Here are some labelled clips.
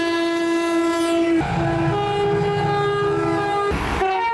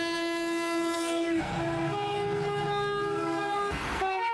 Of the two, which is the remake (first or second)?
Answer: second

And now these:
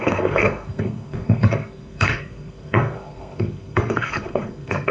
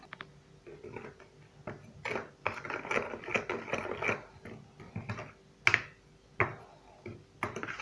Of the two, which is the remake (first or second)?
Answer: first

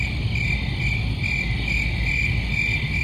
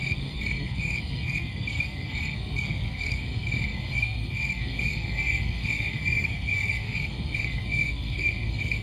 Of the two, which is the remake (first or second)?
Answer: second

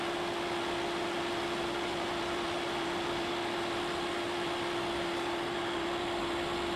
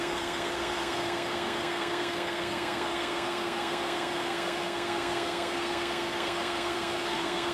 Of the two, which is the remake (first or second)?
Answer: second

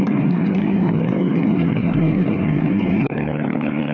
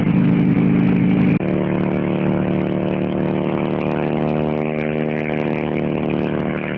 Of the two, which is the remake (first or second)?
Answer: first